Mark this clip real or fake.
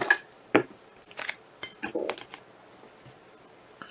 real